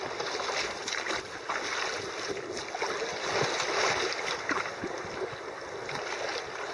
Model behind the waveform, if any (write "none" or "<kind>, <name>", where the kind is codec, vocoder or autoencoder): none